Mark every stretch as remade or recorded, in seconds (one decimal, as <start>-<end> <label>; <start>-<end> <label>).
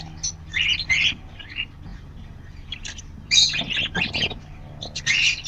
0.0-1.9 recorded; 1.9-5.1 remade; 5.1-5.5 recorded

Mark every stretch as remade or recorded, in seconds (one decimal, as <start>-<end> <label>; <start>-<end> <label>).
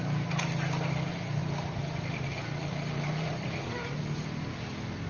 0.0-1.4 recorded; 1.4-4.5 remade; 4.5-5.1 recorded